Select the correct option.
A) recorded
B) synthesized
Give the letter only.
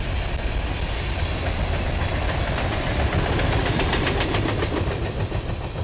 A